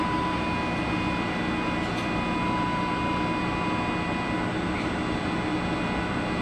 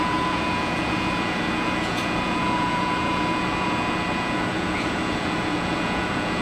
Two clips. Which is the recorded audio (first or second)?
first